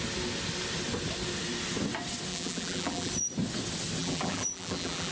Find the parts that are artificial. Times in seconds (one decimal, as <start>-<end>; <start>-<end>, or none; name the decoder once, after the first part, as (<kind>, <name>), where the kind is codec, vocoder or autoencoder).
2.3-3.1 (vocoder, BigVGAN v2); 4.0-5.1